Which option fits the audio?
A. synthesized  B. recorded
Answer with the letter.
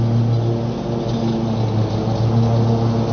B